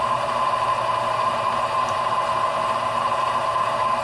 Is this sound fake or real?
fake